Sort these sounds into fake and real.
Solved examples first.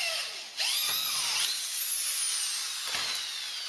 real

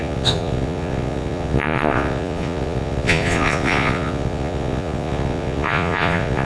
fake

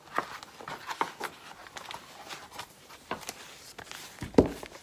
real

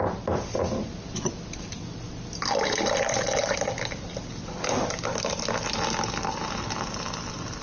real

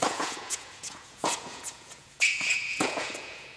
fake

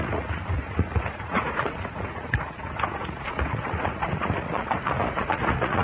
fake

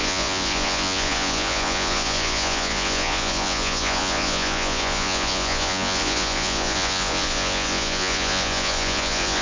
fake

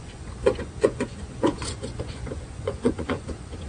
fake